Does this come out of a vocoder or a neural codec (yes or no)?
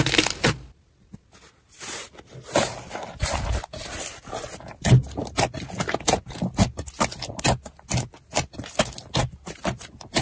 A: no